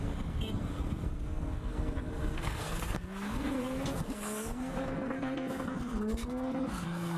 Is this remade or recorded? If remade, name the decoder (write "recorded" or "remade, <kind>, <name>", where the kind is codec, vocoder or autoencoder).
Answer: remade, codec, SNAC